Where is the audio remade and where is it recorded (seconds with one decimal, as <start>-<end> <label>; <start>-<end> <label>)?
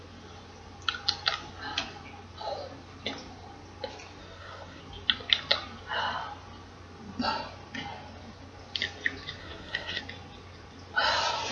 0.0-4.2 recorded; 4.2-4.8 remade; 4.8-9.4 recorded; 9.4-10.0 remade; 10.0-11.5 recorded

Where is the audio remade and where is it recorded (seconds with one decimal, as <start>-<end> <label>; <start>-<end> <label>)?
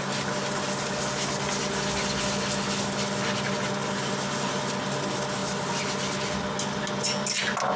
0.0-7.8 recorded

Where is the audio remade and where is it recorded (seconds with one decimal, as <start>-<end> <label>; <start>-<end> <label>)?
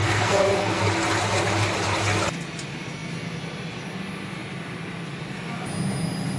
0.0-0.8 remade; 0.8-6.4 recorded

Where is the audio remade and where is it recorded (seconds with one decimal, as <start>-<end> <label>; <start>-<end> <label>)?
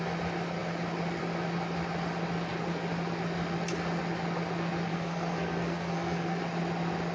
0.0-4.9 recorded; 4.9-6.4 remade; 6.4-7.1 recorded